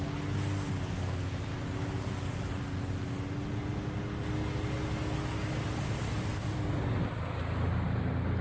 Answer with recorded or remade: recorded